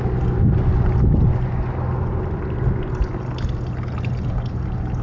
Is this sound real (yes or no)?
yes